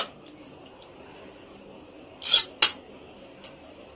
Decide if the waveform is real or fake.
real